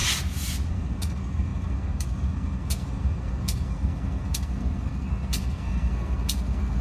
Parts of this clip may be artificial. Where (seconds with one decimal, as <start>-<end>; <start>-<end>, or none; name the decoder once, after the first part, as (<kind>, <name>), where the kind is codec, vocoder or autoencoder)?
0.7-6.8 (codec, SNAC)